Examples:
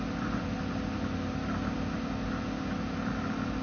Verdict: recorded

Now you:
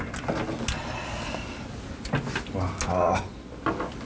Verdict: recorded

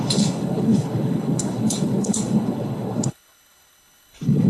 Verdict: remade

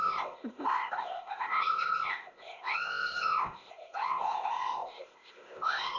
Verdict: remade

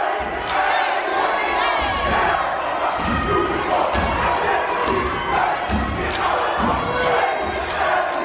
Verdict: recorded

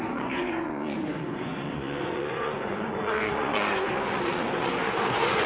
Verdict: remade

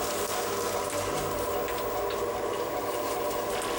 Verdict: recorded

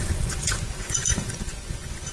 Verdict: remade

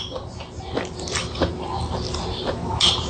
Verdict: recorded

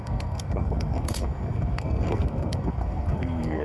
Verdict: remade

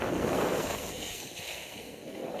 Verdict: remade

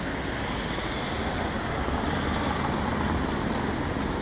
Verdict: recorded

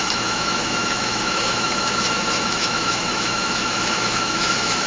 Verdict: remade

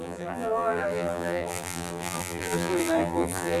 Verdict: remade